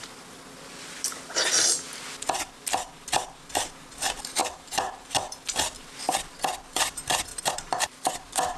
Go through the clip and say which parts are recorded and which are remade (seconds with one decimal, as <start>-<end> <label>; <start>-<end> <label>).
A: 0.0-4.4 recorded; 4.4-5.1 remade; 5.1-7.3 recorded; 7.3-8.1 remade; 8.1-8.6 recorded